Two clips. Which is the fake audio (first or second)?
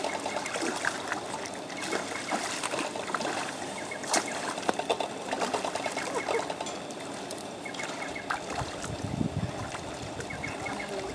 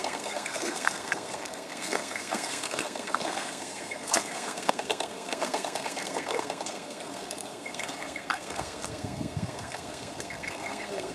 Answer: second